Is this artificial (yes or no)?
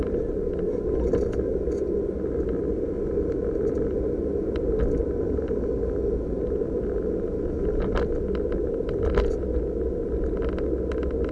no